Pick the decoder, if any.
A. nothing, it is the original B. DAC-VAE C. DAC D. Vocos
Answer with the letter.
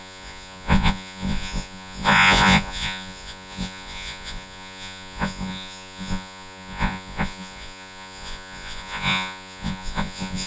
D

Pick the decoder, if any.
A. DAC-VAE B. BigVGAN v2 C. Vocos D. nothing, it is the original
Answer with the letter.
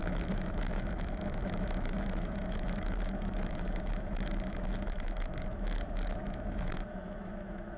A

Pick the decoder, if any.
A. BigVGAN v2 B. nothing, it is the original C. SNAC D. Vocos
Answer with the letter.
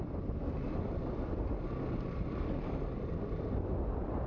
B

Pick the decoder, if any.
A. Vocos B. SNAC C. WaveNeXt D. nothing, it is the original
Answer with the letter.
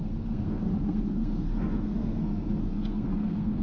B